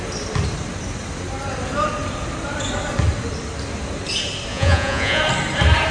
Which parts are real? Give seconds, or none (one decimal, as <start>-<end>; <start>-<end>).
0.0-4.5; 5.2-5.9